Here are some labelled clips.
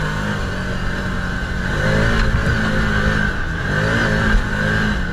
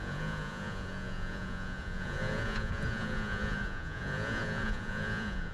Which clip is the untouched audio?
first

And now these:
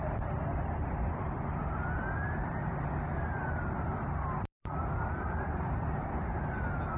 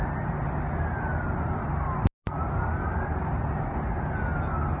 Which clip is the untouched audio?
second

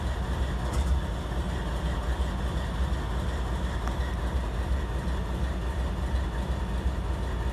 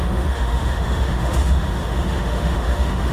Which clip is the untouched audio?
first